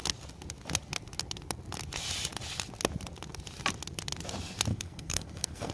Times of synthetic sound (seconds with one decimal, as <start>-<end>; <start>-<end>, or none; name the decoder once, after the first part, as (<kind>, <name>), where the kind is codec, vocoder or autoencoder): 4.7-5.7 (codec, SNAC)